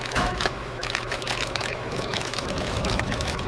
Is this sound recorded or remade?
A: remade